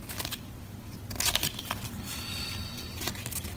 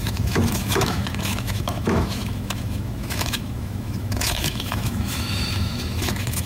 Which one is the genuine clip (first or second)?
first